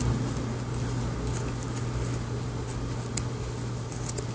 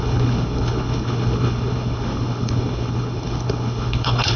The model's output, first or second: second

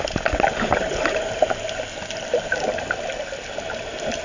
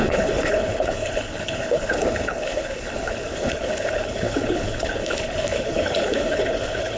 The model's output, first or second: second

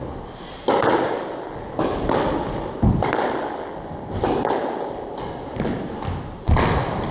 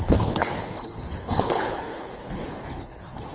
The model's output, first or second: second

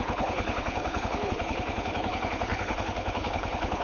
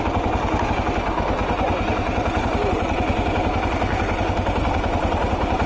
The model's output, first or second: first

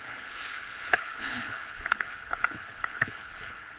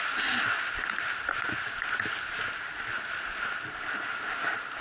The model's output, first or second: first